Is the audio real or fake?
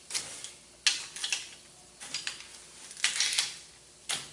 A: real